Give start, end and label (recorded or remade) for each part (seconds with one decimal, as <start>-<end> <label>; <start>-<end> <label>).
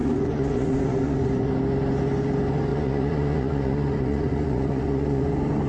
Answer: 0.0-1.5 remade; 1.5-2.7 recorded; 2.7-5.3 remade; 5.3-5.7 recorded